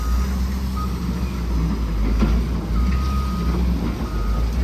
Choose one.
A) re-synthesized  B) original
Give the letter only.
B